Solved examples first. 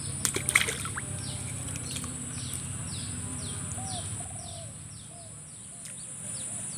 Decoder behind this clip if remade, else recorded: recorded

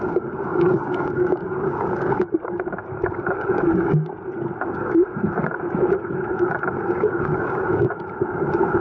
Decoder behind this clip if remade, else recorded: remade, codec, DAC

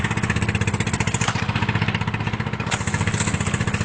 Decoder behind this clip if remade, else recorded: recorded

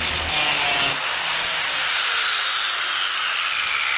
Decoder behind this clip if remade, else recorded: recorded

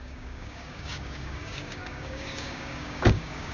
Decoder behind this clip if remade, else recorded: remade, codec, DAC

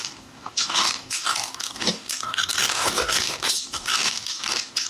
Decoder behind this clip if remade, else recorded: remade, codec, DAC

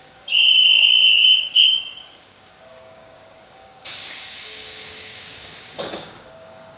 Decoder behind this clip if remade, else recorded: remade, codec, DAC